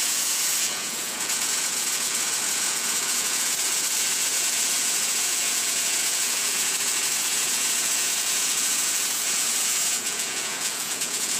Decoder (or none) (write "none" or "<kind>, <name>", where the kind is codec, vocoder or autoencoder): vocoder, Vocos